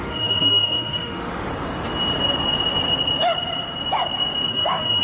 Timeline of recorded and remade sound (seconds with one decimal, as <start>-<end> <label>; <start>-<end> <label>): 0.0-1.5 remade; 1.5-4.5 recorded; 4.5-5.0 remade